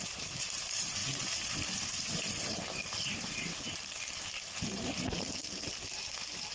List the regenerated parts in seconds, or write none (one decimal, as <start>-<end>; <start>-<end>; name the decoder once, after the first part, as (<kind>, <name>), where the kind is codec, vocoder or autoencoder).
0.0-1.0 (vocoder, BigVGAN v2); 1.9-3.5; 6.0-6.5